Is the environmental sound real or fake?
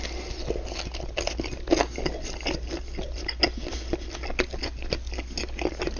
real